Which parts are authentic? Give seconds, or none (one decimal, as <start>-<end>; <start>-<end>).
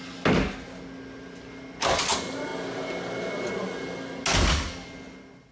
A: 0.0-5.5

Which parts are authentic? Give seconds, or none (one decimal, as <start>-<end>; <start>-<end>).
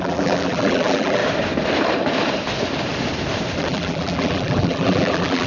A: 1.2-3.6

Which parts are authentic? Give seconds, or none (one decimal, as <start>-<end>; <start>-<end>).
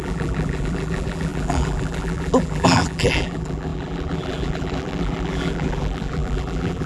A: none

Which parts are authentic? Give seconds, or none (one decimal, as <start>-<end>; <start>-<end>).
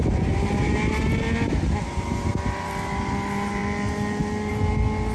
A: 0.0-5.1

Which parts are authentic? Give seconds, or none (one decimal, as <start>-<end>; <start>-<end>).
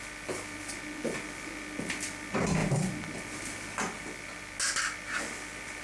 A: 0.0-5.8